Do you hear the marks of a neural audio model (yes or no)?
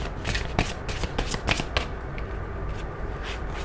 no